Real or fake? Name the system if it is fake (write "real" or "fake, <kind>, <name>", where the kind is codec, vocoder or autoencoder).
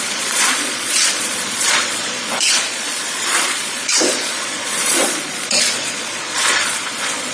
fake, vocoder, Vocos